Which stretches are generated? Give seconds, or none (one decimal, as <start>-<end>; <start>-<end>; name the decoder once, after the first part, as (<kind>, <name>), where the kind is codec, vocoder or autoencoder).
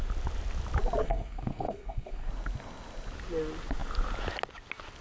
1.0-2.3 (codec, SNAC)